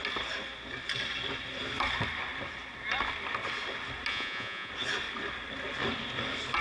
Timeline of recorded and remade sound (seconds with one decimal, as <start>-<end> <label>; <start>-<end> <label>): 0.0-4.1 recorded; 4.1-4.7 remade; 4.7-6.6 recorded